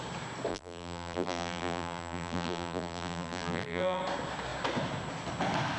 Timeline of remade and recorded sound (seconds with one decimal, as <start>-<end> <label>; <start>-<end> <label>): 0.0-0.5 recorded; 0.5-4.0 remade; 4.0-5.8 recorded